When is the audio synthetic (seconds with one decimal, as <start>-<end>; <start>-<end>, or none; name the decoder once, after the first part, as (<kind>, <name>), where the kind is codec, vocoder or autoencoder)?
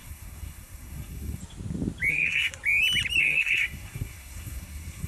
0.0-1.4 (codec, SNAC); 2.1-2.5; 3.2-5.1